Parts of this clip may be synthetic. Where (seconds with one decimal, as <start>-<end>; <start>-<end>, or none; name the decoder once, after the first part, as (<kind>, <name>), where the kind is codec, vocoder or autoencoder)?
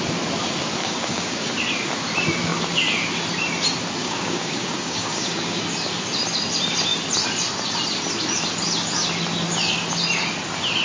0.8-1.5 (codec, DAC); 4.0-5.6